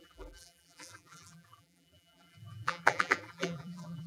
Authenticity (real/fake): fake